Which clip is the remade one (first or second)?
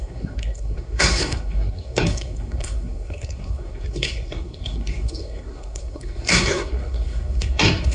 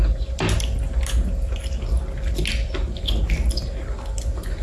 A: first